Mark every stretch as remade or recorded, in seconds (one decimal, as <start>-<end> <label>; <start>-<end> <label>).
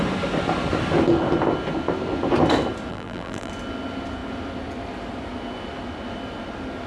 0.0-2.9 recorded; 2.9-3.5 remade; 3.5-6.9 recorded